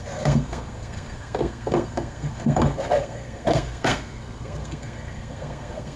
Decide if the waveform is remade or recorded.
remade